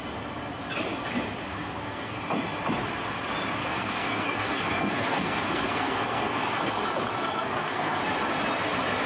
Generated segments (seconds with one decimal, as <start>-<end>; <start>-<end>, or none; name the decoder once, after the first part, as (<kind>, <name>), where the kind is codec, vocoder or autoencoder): 1.5-2.2 (codec, SNAC); 3.6-6.7; 7.2-8.0